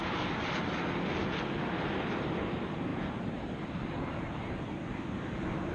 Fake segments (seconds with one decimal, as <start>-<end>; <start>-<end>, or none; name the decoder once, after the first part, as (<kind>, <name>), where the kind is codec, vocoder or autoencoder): none